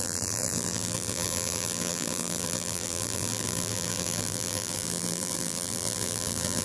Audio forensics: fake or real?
fake